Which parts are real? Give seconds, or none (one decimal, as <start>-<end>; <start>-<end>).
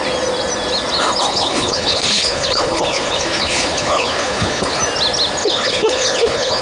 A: 0.0-1.3; 4.8-5.4